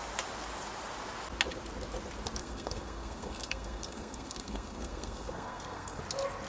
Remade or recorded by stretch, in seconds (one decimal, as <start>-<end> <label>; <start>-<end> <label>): 0.0-2.4 recorded; 2.4-6.0 remade; 6.0-6.5 recorded